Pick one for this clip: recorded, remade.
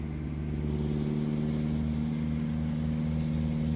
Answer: recorded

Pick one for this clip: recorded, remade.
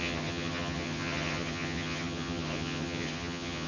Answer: remade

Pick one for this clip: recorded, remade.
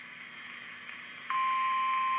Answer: recorded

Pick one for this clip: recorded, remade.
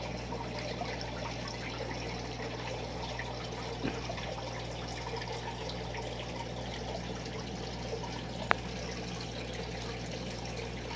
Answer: recorded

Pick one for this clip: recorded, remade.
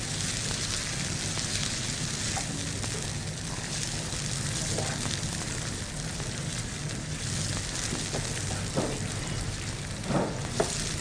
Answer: recorded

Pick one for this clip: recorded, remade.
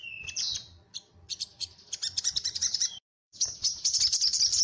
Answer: remade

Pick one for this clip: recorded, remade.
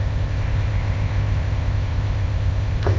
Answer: remade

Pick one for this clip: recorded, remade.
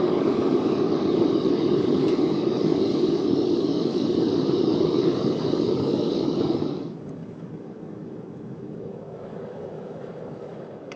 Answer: remade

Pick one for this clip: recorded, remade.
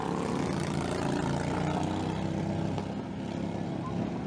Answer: recorded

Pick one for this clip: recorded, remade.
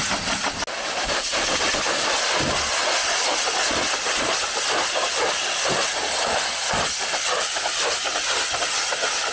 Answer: recorded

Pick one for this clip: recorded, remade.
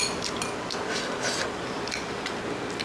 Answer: recorded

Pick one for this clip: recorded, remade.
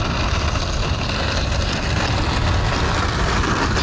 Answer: recorded